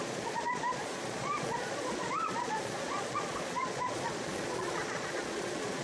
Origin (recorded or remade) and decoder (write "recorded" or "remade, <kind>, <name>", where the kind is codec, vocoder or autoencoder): remade, vocoder, Vocos